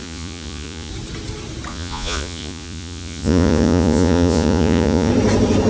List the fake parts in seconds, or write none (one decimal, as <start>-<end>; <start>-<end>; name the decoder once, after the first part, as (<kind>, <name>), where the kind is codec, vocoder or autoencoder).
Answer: 0.0-0.9 (vocoder, Vocos); 1.7-5.1